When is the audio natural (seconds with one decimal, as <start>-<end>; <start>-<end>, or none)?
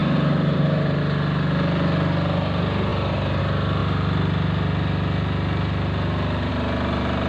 1.0-2.9; 3.4-7.3